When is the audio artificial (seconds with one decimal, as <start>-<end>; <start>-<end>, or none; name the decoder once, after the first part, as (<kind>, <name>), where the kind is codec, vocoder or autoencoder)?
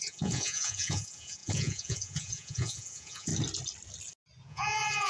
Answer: 0.0-3.3 (vocoder, Vocos); 4.5-5.1